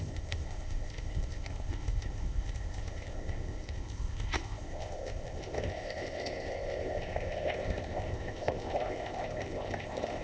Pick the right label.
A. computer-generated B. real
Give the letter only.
A